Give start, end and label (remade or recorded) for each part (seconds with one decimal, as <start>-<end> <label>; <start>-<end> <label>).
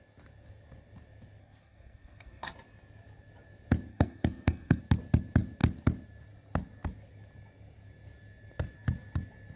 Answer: 0.0-1.4 recorded; 1.4-2.5 remade; 2.5-3.9 recorded; 3.9-4.8 remade; 4.8-9.6 recorded